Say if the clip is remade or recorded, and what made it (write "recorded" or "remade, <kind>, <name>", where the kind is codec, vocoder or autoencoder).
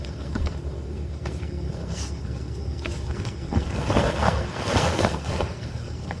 remade, codec, SNAC